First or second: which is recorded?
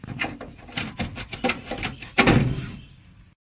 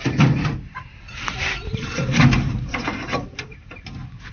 first